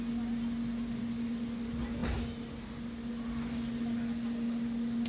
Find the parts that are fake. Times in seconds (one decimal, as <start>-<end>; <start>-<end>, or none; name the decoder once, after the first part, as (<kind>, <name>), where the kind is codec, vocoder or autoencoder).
none